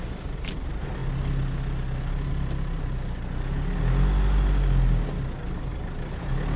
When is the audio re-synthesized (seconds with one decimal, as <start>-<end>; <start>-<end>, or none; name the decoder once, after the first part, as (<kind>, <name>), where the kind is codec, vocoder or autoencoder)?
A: none